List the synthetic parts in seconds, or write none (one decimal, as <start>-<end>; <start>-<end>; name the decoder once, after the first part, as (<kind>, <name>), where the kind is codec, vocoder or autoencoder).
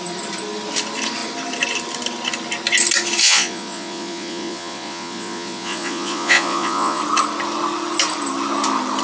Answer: 3.2-7.0 (vocoder, Vocos)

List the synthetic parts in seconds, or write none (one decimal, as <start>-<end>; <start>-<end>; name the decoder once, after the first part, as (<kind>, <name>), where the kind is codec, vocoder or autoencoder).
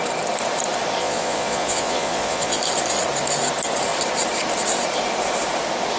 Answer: 1.0-2.6 (vocoder, Vocos)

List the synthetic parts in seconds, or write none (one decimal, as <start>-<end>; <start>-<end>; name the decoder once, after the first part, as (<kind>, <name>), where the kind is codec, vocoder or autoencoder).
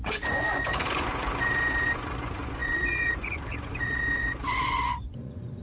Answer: 0.0-5.6 (vocoder, Vocos)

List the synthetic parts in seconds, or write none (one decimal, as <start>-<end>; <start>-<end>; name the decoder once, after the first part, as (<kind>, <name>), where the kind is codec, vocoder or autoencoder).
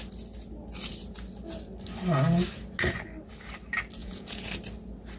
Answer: 4.0-4.5 (vocoder, Vocos)